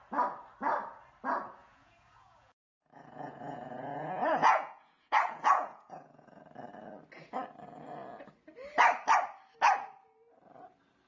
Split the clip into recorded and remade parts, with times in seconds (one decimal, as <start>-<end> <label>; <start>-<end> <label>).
0.0-1.6 recorded; 1.6-6.4 remade; 6.4-11.1 recorded